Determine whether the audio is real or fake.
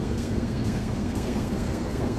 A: fake